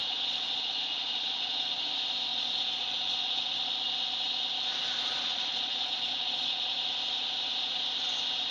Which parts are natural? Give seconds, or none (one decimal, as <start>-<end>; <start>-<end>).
1.8-2.3; 3.6-4.8; 6.7-8.5